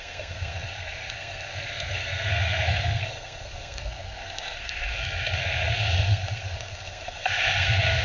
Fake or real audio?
fake